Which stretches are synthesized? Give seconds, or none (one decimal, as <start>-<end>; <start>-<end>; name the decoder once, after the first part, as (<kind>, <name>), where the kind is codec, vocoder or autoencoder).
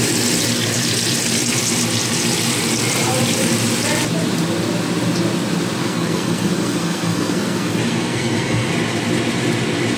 5.8-8.7 (codec, SNAC)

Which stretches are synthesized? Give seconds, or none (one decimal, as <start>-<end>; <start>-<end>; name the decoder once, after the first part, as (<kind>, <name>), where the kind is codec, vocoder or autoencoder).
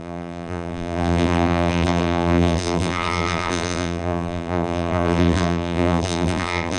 0.0-6.8 (vocoder, BigVGAN v2)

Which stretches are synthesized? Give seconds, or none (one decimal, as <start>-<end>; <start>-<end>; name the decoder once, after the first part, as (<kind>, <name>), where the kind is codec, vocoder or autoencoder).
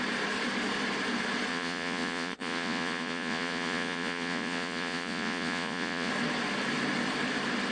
1.5-6.1 (vocoder, Vocos)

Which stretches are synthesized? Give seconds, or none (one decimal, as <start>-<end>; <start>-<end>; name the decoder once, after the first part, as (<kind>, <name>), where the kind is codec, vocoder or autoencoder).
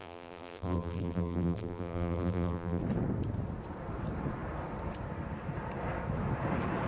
0.0-2.8 (vocoder, BigVGAN v2)